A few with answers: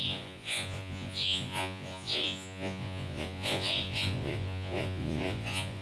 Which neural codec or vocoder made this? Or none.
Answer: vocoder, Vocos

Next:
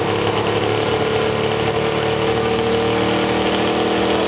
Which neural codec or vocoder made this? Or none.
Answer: none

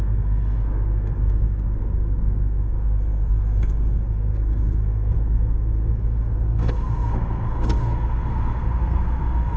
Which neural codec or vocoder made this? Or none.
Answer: codec, SNAC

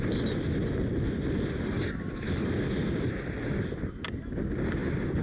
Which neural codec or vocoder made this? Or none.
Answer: none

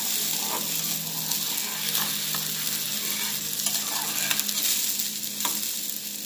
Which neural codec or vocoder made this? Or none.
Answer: none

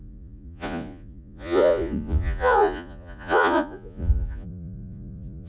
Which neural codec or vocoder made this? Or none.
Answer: vocoder, Vocos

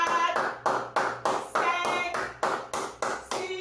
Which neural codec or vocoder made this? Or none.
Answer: none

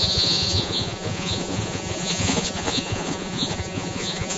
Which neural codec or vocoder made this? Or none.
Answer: vocoder, Vocos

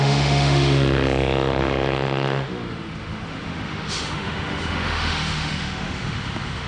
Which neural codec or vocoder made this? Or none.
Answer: autoencoder, DAC-VAE